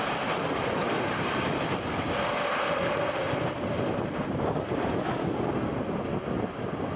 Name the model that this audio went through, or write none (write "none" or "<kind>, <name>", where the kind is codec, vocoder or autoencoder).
none